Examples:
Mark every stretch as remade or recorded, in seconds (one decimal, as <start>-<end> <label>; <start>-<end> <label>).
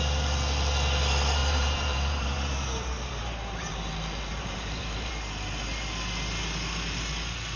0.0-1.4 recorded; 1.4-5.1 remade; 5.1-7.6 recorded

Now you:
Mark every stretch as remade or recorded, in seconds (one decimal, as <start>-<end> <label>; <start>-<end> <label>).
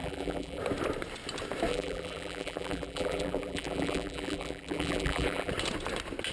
0.0-0.6 remade; 0.6-1.7 recorded; 1.7-5.5 remade; 5.5-6.3 recorded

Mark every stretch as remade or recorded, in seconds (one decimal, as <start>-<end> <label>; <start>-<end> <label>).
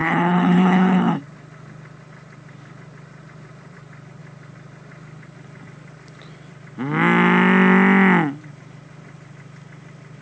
0.0-1.2 remade; 1.2-10.2 recorded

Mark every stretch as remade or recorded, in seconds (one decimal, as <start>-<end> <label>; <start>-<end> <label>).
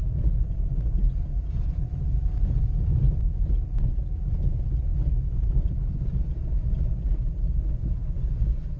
0.0-8.0 recorded; 8.0-8.8 remade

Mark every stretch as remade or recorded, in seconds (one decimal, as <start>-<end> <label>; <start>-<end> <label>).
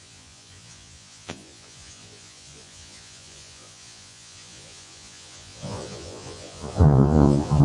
0.0-7.6 remade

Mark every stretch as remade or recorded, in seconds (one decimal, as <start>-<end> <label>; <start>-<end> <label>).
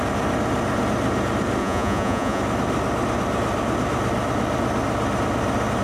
0.0-1.6 recorded; 1.6-2.4 remade; 2.4-5.8 recorded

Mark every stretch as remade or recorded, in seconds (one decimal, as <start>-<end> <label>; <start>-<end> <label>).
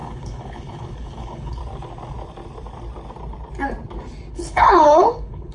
0.0-1.6 remade; 1.6-4.3 recorded; 4.3-5.5 remade